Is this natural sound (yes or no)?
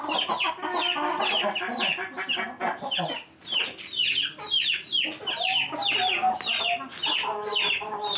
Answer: yes